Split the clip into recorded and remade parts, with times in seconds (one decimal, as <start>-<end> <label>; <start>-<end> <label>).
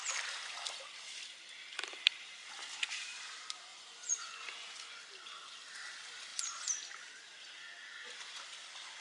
0.0-3.7 recorded; 3.7-5.0 remade; 5.0-9.0 recorded